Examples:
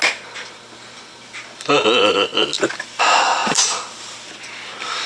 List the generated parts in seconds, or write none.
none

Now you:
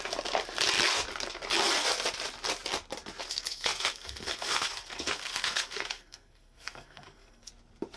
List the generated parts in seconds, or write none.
3.2-7.5 (codec, SNAC)